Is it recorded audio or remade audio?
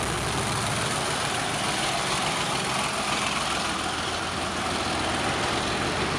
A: recorded